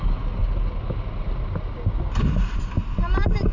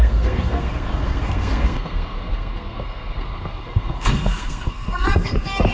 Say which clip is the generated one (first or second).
second